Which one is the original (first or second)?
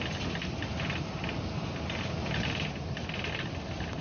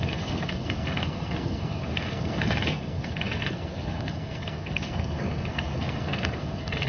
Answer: first